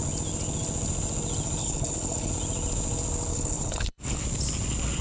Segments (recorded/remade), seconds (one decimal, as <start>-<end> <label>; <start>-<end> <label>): 0.0-1.6 recorded; 1.6-2.3 remade; 2.3-3.3 recorded; 3.3-4.2 remade; 4.2-5.0 recorded